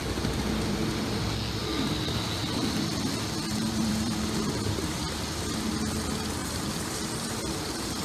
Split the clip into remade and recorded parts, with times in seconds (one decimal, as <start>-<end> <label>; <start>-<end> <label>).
0.0-1.2 remade; 1.2-1.6 recorded; 1.6-5.6 remade; 5.6-6.4 recorded; 6.4-7.5 remade; 7.5-8.0 recorded